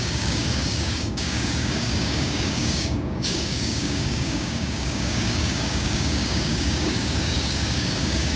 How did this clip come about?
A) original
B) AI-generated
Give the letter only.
B